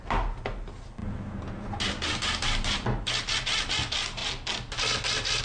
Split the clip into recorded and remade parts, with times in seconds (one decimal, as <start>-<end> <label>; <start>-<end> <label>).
0.0-5.4 recorded